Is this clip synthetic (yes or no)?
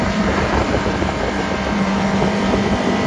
yes